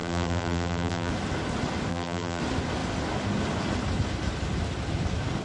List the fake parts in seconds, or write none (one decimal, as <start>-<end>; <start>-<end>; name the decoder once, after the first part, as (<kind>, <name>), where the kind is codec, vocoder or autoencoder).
0.0-1.1 (vocoder, BigVGAN v2); 1.9-2.4